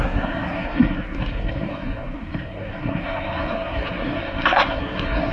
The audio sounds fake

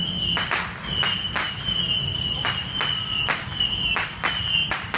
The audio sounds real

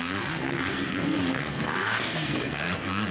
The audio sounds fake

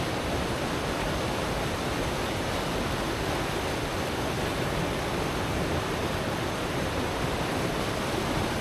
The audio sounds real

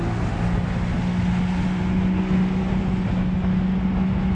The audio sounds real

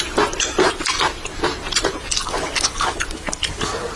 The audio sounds real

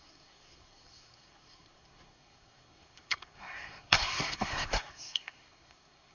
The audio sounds fake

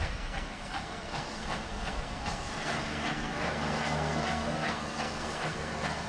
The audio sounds fake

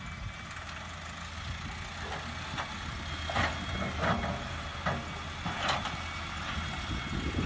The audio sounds real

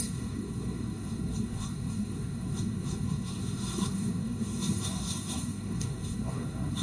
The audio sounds fake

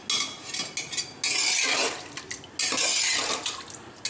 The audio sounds real